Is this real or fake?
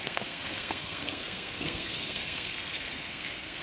fake